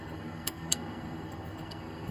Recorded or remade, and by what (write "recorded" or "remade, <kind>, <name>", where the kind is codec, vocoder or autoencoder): remade, codec, SNAC